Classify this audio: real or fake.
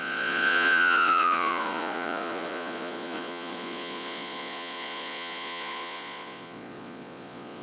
fake